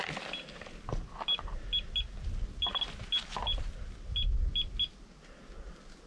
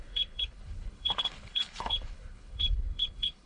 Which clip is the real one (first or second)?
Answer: first